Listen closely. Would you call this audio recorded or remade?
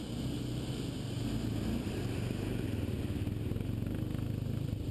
recorded